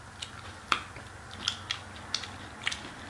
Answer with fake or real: real